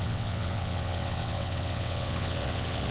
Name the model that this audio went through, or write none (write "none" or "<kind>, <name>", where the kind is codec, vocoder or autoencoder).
vocoder, WaveNeXt